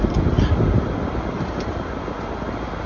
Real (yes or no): yes